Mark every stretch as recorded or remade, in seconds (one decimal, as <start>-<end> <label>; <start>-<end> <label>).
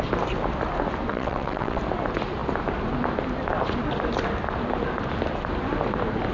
0.0-1.1 recorded; 1.1-1.8 remade; 1.8-6.3 recorded